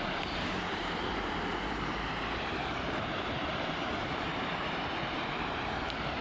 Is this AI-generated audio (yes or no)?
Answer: yes